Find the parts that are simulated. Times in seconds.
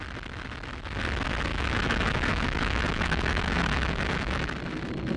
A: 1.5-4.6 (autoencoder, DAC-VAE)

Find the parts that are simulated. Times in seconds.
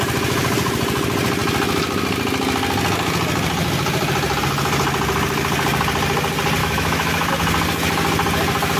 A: 6.6-7.3 (autoencoder, DAC-VAE)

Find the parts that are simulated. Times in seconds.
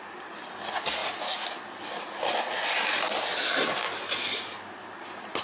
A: none